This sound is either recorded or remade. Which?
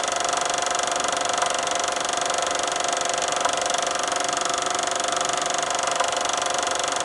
recorded